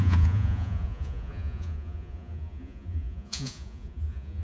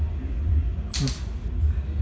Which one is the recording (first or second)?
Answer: second